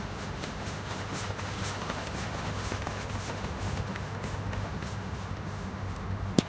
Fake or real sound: fake